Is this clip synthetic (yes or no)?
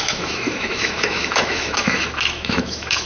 yes